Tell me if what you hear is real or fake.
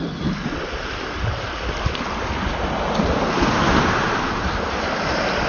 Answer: real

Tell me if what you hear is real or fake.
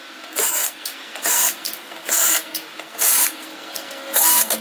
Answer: fake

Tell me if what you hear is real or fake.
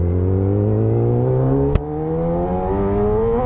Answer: real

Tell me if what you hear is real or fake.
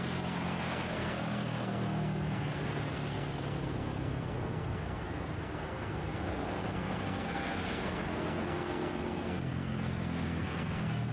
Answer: fake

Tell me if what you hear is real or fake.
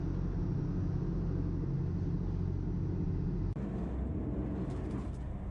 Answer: real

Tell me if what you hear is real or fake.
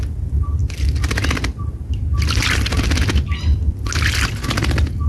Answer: real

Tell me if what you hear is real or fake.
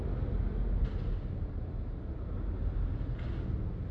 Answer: real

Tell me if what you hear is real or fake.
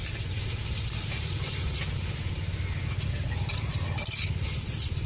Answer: real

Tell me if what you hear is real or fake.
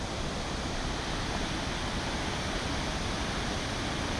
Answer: real